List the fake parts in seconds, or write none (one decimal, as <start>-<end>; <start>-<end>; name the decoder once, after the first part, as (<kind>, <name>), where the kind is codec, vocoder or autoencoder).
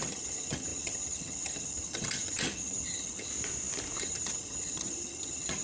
0.0-3.3 (vocoder, HiFi-GAN); 4.0-5.6